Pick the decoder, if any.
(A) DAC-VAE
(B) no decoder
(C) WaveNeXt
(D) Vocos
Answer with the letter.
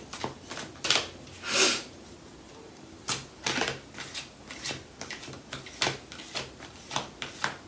B